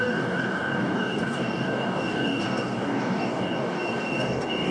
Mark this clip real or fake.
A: fake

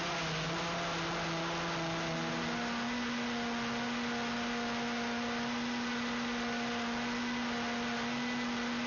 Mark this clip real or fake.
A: real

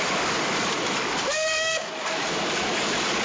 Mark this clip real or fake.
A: fake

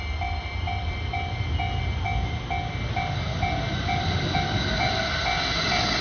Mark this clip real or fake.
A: real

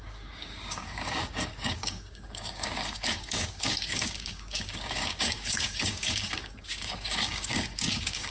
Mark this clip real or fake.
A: fake